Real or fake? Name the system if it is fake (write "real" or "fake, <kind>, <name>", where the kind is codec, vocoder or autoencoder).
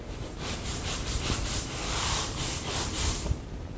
fake, vocoder, BigVGAN v2